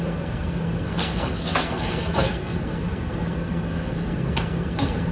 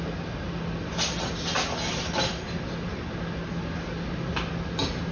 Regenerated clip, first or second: first